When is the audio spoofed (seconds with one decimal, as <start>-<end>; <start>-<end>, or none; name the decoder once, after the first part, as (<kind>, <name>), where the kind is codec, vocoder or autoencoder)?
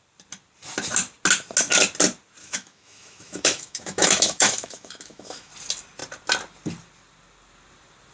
2.4-5.5 (autoencoder, DAC-VAE)